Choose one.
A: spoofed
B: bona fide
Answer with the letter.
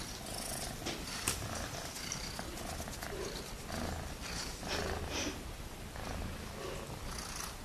B